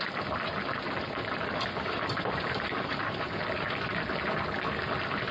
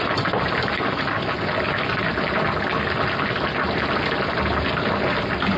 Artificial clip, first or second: first